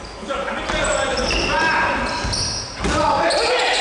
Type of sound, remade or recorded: recorded